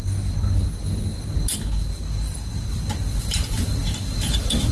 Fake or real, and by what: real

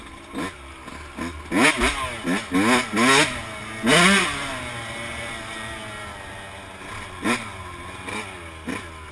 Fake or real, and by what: real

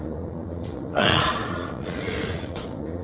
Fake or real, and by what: fake, vocoder, Vocos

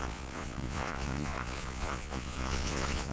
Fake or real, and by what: fake, vocoder, Vocos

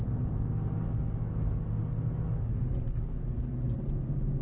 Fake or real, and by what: real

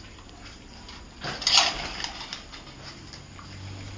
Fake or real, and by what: real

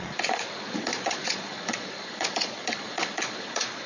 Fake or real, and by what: fake, vocoder, Vocos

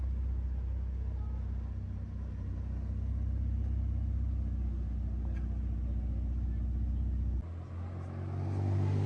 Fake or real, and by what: real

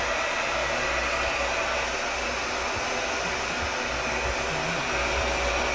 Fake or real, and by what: real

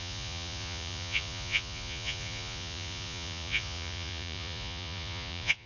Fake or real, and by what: fake, vocoder, Vocos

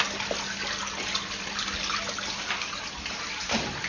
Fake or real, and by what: real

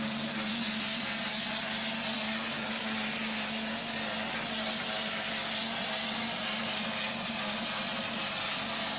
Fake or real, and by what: real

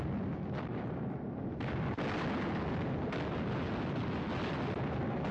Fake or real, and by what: real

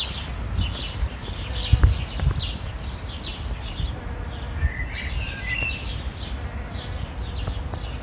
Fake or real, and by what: real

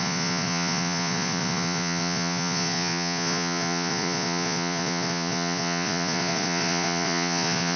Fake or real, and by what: fake, vocoder, Vocos